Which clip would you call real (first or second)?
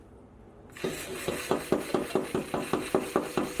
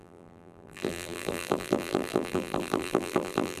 first